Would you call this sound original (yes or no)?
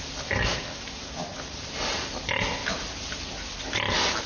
yes